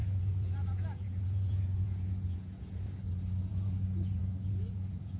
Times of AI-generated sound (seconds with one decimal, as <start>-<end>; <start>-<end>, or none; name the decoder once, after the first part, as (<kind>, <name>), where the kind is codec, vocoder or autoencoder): 0.0-3.1 (vocoder, Vocos); 3.5-5.2